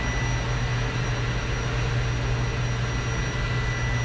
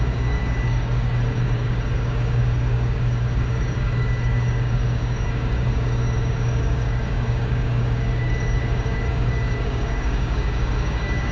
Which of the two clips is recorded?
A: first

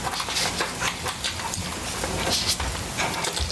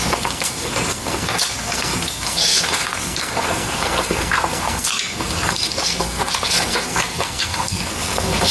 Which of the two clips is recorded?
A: first